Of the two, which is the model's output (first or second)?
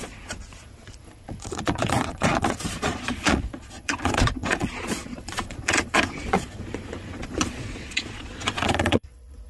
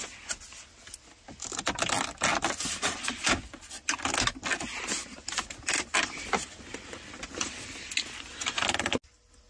first